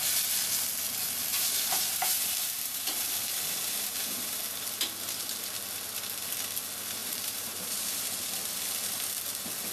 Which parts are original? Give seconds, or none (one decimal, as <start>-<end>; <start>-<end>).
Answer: 0.0-1.3; 4.4-7.0; 7.9-9.7